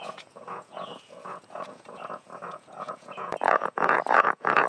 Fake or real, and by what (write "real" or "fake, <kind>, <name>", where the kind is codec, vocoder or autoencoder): fake, vocoder, Vocos